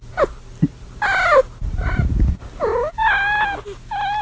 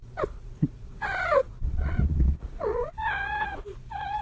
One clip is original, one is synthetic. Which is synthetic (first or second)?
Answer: second